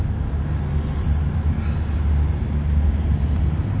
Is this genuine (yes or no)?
yes